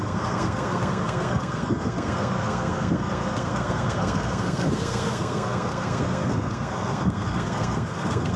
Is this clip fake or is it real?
fake